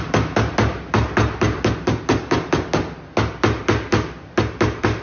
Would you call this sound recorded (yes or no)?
yes